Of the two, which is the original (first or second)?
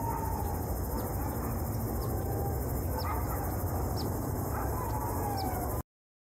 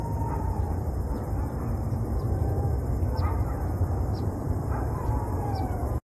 first